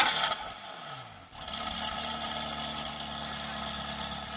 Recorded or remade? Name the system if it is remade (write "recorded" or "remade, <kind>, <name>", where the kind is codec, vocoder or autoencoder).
recorded